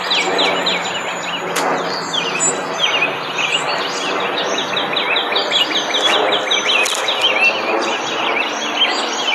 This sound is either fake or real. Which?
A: real